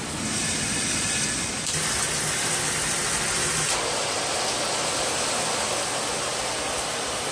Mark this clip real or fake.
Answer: real